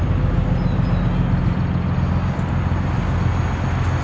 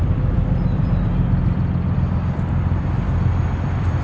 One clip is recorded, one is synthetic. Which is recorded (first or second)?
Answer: first